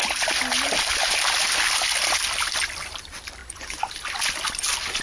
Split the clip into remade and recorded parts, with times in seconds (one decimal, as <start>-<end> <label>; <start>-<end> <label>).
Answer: 0.0-3.4 recorded; 3.4-3.9 remade; 3.9-5.0 recorded